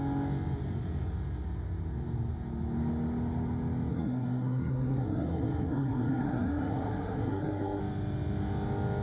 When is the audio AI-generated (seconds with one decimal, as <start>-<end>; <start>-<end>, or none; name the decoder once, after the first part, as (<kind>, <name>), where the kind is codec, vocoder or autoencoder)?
3.9-7.8 (codec, SNAC)